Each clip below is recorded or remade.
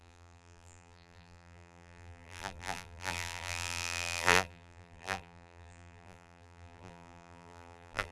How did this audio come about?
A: remade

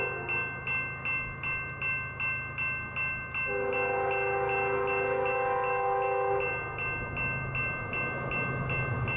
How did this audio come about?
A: recorded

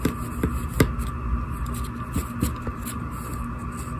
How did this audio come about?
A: recorded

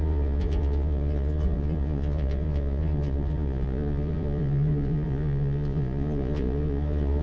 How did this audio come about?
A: remade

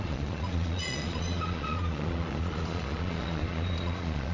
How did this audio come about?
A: remade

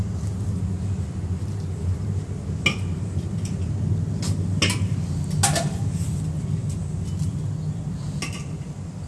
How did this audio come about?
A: recorded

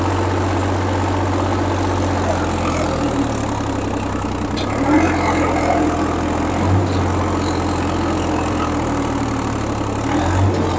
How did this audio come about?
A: recorded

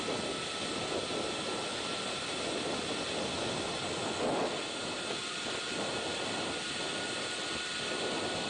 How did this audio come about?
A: recorded